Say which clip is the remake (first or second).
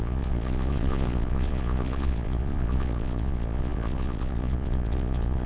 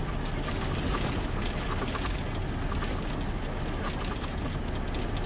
first